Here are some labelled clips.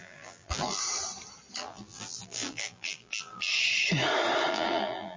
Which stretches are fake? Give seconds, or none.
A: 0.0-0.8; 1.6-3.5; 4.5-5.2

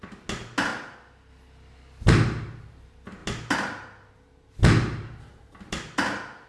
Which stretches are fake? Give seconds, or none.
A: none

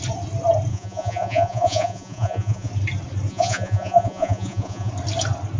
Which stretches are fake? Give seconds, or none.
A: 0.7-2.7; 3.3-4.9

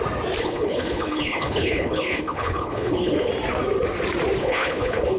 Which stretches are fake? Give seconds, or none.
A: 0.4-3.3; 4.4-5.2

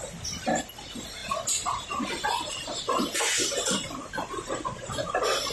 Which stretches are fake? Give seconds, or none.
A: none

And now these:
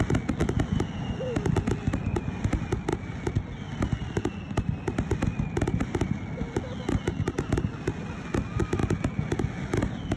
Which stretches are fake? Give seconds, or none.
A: none